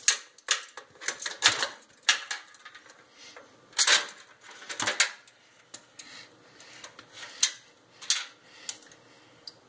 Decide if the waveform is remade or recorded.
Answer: recorded